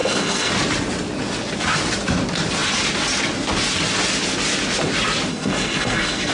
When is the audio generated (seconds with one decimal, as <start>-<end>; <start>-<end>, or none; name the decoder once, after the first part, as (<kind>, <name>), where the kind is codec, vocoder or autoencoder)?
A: 0.0-0.5 (codec, SNAC); 5.3-6.3